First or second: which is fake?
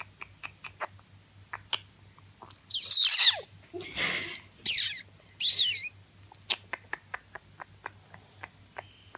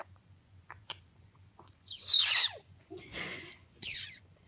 second